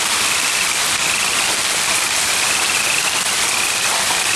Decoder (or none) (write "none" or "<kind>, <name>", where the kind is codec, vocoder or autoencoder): none